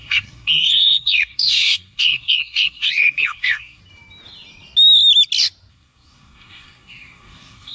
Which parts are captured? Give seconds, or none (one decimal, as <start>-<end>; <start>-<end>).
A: 3.8-5.7